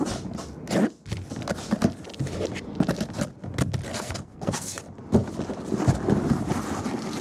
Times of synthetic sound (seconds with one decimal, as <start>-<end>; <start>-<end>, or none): 3.9-4.8